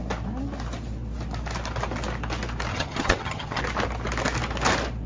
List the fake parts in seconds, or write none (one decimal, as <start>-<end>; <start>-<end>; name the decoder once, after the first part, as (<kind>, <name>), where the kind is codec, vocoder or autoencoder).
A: 2.7-3.6 (vocoder, HiFi-GAN)